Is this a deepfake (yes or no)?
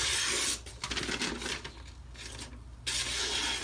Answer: no